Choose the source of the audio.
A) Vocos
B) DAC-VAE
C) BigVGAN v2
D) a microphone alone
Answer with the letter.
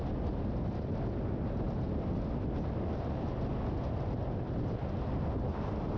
D